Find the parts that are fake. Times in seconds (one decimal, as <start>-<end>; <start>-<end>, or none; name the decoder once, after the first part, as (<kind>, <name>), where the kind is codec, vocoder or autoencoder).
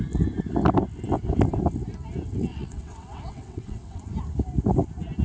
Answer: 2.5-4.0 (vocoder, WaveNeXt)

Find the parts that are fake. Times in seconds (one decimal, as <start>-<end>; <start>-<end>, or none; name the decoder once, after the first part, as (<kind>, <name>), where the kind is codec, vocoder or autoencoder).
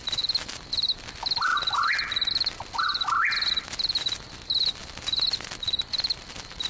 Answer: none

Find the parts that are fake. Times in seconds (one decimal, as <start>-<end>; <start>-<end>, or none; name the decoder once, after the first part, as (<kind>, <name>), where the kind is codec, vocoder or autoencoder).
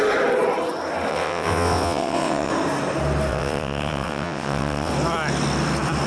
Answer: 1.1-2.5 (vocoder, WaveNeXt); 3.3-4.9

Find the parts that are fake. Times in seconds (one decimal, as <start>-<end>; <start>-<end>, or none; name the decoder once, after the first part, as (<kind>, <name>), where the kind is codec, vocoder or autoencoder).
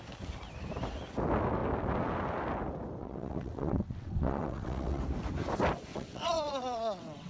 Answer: 3.0-5.0 (vocoder, WaveNeXt); 5.9-7.3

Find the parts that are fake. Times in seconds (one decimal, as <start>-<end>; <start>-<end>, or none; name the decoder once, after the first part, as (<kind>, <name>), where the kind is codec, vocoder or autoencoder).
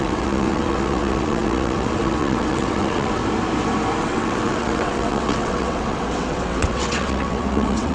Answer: 0.0-3.2 (vocoder, WaveNeXt); 4.0-7.9